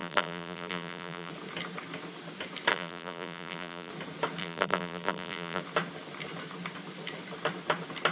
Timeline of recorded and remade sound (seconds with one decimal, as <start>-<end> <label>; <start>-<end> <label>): 0.0-1.3 remade; 1.3-2.7 recorded; 2.7-3.9 remade; 3.9-4.4 recorded; 4.4-5.6 remade; 5.6-8.1 recorded